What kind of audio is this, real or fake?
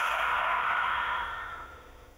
fake